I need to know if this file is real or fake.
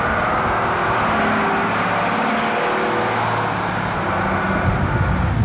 real